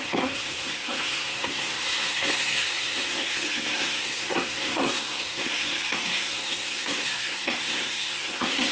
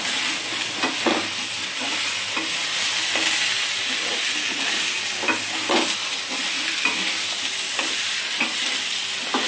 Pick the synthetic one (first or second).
first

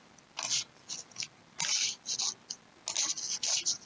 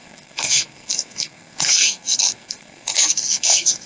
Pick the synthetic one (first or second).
second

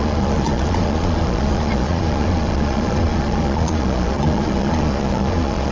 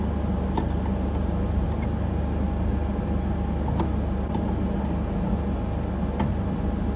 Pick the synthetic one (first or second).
first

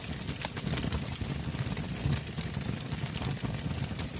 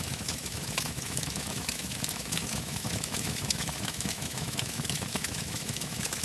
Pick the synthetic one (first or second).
second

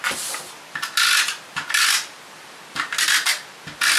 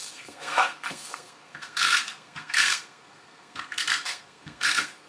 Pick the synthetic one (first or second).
second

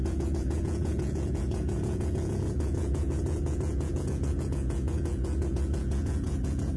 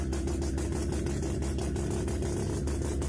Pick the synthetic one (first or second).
first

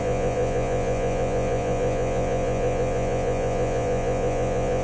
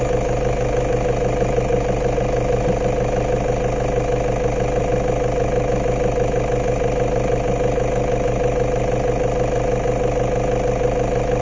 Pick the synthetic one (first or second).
first